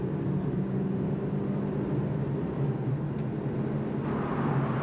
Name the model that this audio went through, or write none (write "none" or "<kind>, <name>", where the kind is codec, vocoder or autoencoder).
none